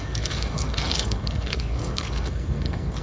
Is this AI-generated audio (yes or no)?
yes